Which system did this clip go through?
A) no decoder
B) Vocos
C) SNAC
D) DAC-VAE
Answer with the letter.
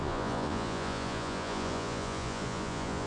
B